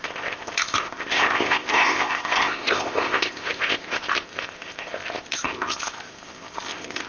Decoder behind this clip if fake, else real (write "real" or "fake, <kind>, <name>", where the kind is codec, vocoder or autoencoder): fake, codec, ZipCodec